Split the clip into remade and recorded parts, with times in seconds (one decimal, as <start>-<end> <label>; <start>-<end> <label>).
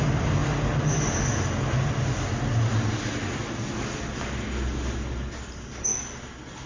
0.0-6.7 recorded